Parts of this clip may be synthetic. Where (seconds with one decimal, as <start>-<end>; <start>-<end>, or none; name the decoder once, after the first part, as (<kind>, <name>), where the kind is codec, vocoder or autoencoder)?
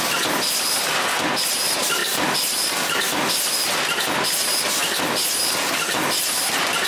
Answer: 0.0-6.9 (vocoder, BigVGAN v2)